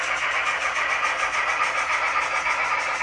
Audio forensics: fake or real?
real